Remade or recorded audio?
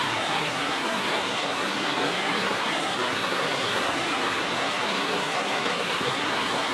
remade